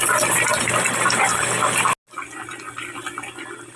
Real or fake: real